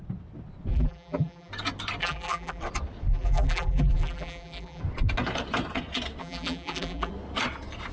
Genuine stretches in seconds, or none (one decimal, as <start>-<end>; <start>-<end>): 0.0-0.7; 1.5-2.0; 2.6-3.1; 4.8-6.2; 7.1-7.9